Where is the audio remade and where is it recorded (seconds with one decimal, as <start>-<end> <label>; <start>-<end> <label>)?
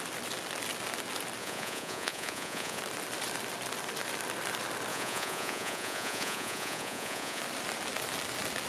0.0-1.4 recorded; 1.4-2.8 remade; 2.8-4.9 recorded; 4.9-7.4 remade; 7.4-8.7 recorded